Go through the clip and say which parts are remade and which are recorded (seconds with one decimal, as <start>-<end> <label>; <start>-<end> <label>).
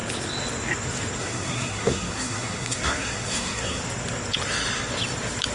0.0-1.2 recorded; 1.2-3.8 remade; 3.8-5.5 recorded